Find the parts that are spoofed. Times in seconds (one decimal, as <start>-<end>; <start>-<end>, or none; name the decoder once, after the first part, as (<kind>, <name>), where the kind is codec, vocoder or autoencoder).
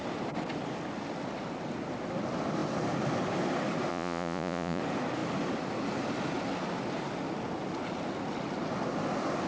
3.9-4.8 (vocoder, Vocos)